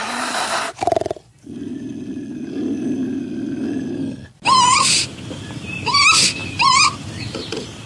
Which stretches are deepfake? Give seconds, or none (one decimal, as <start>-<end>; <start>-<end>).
none